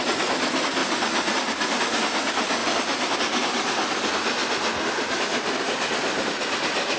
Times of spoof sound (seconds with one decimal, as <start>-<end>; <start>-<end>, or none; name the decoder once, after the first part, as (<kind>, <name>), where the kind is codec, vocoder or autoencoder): none